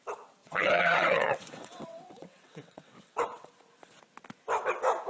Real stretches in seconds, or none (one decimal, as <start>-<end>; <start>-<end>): 0.0-0.4; 3.5-5.1